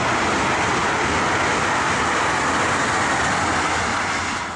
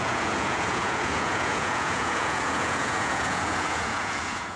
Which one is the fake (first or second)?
second